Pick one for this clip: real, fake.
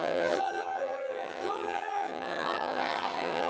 fake